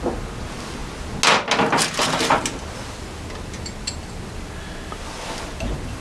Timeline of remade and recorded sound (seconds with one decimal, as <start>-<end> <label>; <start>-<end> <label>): 0.0-6.0 recorded